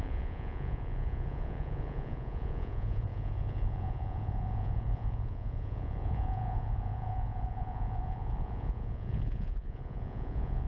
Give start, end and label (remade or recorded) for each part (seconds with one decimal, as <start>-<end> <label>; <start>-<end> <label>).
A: 0.0-10.7 remade